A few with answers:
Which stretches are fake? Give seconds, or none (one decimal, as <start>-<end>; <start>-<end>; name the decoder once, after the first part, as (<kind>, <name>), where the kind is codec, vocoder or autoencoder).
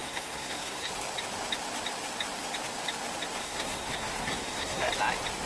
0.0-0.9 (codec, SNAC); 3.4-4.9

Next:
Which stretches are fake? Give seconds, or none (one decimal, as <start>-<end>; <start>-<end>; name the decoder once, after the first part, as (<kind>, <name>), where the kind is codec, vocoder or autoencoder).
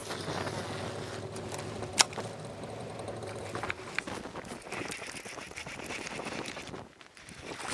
none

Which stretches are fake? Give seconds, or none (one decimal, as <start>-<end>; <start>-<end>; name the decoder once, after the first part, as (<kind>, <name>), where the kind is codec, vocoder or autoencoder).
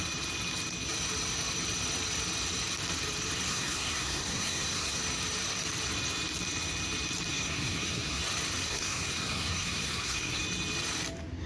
3.5-5.0 (codec, SNAC); 7.3-8.2; 8.6-10.4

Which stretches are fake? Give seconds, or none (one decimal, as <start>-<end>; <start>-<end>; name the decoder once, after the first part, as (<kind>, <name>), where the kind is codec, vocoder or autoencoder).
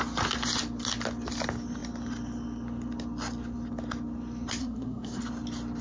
4.6-5.2 (codec, SNAC)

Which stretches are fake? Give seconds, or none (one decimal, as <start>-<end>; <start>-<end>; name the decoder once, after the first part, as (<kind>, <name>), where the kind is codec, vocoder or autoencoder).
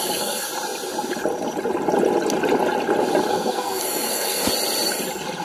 0.0-0.5 (codec, SNAC); 3.3-4.4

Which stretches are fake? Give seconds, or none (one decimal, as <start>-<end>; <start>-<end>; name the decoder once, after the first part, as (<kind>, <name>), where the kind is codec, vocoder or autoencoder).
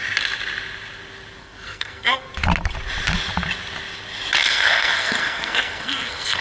1.4-2.3 (codec, SNAC); 4.4-6.4